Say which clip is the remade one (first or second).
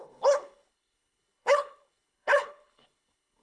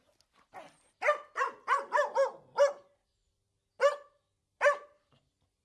first